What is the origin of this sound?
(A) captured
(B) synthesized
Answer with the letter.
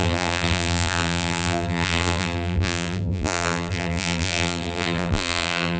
B